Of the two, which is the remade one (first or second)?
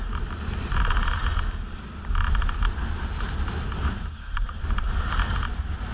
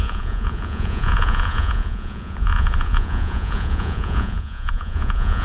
second